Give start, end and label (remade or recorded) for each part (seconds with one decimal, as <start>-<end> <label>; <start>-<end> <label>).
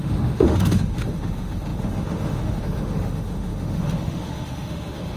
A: 0.0-5.2 remade